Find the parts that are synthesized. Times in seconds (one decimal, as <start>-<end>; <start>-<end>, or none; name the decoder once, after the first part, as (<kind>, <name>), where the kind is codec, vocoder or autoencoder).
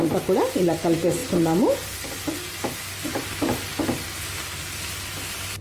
none